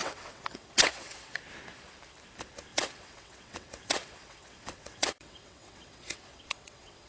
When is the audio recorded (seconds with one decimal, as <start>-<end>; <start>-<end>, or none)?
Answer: 1.4-2.7

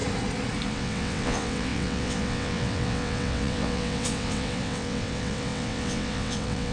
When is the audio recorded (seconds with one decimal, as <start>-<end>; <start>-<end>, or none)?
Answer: 0.0-0.7

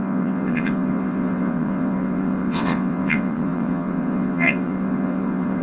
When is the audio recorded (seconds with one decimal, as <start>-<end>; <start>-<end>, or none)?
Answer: none

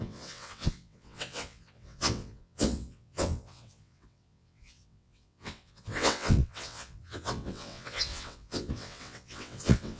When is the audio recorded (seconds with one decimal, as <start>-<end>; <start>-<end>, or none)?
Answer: none

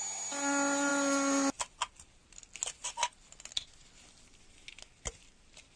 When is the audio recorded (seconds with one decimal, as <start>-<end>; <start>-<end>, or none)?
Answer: 0.0-5.8